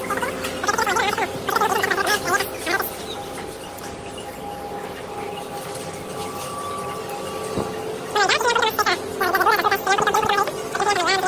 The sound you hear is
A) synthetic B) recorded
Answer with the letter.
B